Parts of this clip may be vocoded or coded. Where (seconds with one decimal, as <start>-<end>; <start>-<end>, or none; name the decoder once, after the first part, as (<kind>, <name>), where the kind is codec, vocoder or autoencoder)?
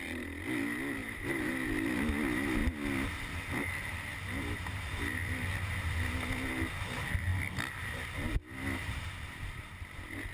1.0-1.6 (vocoder, BigVGAN v2)